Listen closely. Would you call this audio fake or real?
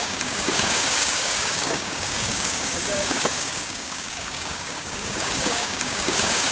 fake